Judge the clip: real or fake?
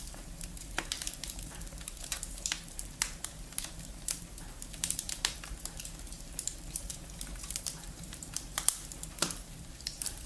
fake